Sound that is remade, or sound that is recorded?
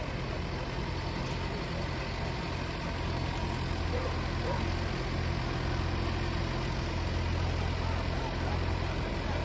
recorded